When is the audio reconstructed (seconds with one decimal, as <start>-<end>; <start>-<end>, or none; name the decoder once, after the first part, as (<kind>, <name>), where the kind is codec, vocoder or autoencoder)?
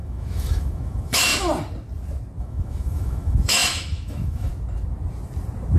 0.0-1.3 (autoencoder, DAC-VAE); 2.4-4.5